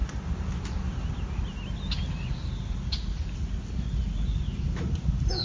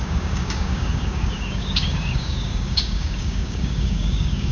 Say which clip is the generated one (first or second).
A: second